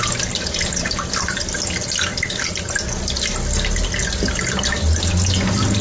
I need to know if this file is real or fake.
real